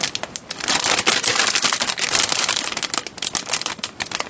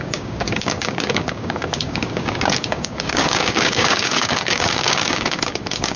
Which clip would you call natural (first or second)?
first